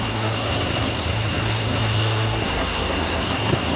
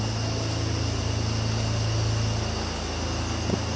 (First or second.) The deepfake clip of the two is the first